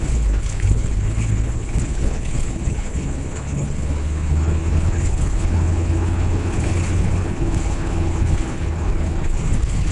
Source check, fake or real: fake